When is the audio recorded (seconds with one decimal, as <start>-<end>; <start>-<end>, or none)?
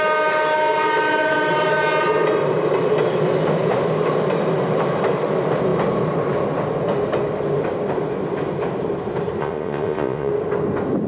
0.0-9.4; 10.3-11.1